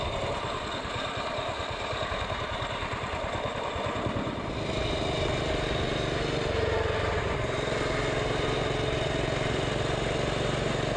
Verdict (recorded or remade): recorded